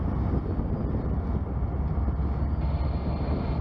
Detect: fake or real real